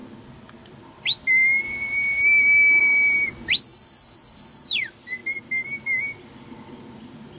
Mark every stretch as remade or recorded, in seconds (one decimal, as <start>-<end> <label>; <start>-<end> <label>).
0.0-7.4 recorded